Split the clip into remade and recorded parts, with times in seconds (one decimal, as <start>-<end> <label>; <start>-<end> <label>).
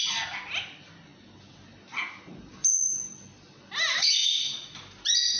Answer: 0.0-5.4 recorded